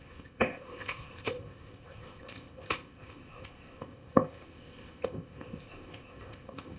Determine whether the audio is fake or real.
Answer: fake